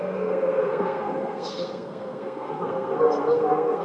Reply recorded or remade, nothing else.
remade